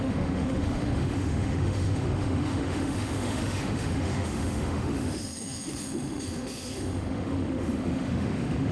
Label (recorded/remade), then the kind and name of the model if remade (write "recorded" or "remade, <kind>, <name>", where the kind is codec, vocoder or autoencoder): remade, autoencoder, DAC-VAE